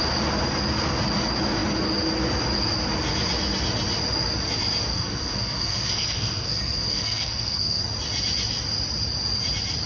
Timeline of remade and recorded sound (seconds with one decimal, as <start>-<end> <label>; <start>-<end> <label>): 0.0-4.9 recorded; 4.9-7.8 remade; 7.8-9.9 recorded